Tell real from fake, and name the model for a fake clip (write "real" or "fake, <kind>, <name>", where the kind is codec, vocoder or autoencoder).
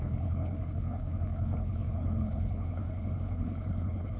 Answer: fake, codec, HILCodec